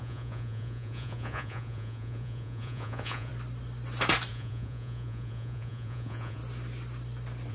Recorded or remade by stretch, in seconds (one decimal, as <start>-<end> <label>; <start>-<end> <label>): 0.0-3.3 remade; 3.3-4.3 recorded; 4.3-6.4 remade; 6.4-7.5 recorded